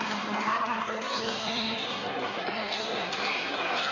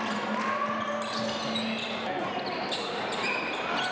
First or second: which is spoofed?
first